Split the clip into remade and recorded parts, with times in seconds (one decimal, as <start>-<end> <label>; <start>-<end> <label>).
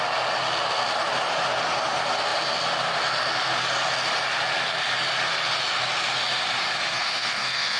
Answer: 0.0-6.9 recorded; 6.9-7.8 remade